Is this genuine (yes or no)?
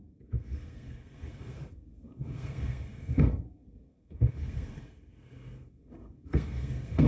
no